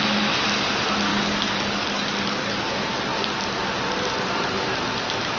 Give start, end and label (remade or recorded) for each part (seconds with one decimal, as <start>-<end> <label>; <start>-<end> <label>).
0.0-1.1 recorded; 1.1-2.7 remade; 2.7-5.4 recorded